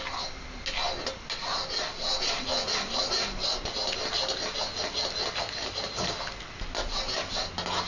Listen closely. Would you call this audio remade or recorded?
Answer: recorded